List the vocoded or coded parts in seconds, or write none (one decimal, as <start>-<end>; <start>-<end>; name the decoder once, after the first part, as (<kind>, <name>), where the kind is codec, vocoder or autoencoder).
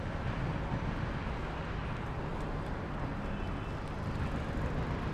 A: none